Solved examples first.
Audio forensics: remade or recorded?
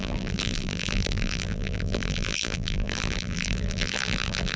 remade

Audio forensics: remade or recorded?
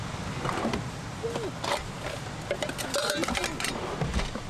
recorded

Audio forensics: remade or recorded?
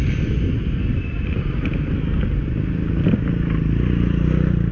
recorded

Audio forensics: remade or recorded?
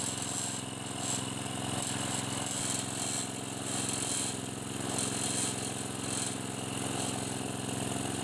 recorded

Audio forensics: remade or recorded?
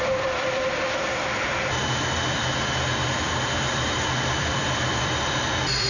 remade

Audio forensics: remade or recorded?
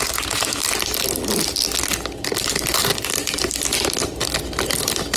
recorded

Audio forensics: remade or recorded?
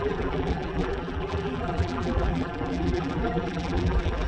remade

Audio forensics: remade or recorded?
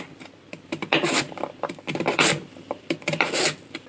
remade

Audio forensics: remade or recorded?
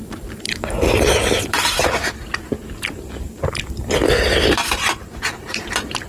remade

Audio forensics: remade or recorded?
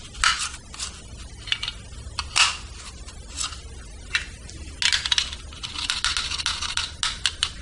recorded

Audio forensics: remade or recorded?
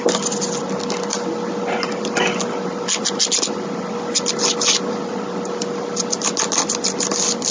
recorded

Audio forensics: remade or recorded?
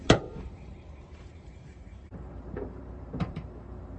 remade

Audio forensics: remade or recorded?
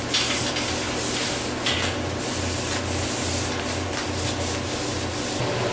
recorded